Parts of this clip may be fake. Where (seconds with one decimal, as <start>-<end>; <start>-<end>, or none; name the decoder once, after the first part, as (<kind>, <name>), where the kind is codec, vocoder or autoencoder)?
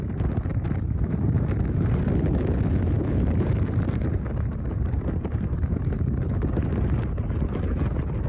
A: 0.5-2.0 (vocoder, BigVGAN v2); 2.7-7.0